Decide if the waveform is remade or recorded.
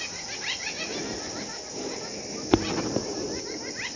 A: recorded